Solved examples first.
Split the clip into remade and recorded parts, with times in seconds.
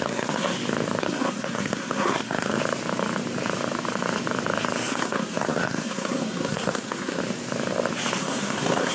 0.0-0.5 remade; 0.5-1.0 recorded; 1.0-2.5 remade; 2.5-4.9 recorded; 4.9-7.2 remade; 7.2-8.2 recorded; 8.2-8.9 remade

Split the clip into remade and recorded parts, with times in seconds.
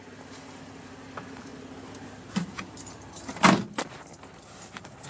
0.0-1.5 remade; 1.5-2.3 recorded; 2.3-5.1 remade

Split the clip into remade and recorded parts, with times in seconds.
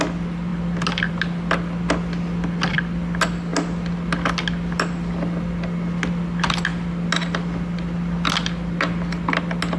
0.0-9.8 recorded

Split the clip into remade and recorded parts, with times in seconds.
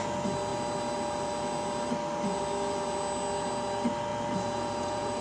0.0-4.1 recorded; 4.1-5.2 remade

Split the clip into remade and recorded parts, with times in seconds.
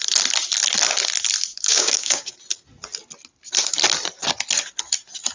0.0-1.5 recorded; 1.5-2.3 remade; 2.3-5.3 recorded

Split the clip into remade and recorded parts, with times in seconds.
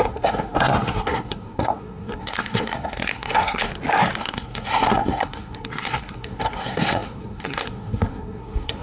0.0-3.7 remade; 3.7-4.2 recorded; 4.2-8.8 remade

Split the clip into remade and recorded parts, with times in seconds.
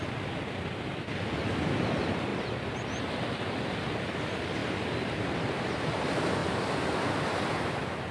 0.0-8.1 recorded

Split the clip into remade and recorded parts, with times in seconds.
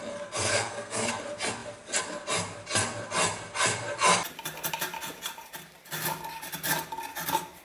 0.0-0.5 recorded; 0.5-1.1 remade; 1.1-7.6 recorded